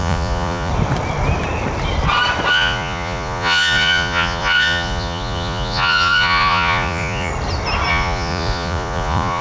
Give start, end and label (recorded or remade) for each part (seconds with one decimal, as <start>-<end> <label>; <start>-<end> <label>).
0.0-0.7 remade; 0.7-2.5 recorded; 2.5-7.3 remade; 7.3-7.9 recorded; 7.9-9.4 remade